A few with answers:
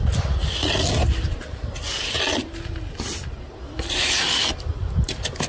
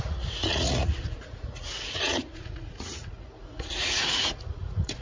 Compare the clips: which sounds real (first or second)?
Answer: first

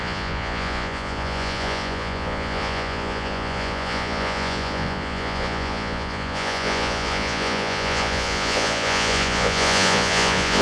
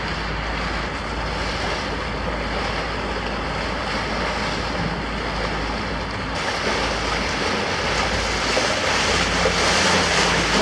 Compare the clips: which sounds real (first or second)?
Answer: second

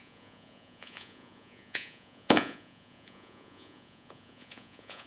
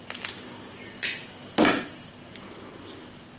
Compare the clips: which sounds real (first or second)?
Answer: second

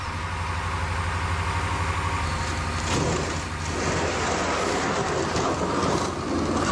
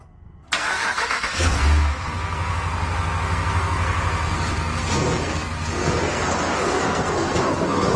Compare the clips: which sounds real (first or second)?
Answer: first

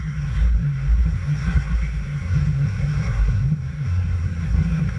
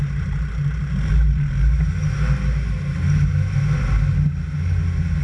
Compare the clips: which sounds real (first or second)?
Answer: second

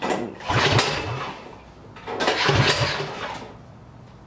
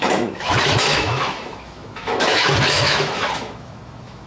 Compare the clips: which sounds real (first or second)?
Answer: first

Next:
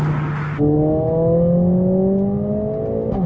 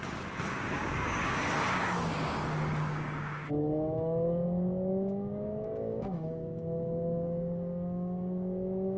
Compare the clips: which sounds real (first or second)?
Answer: first